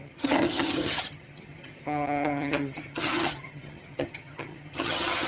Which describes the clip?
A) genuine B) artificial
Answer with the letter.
B